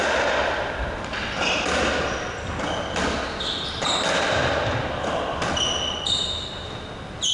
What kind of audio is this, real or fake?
real